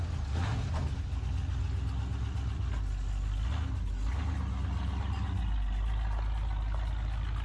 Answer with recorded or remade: recorded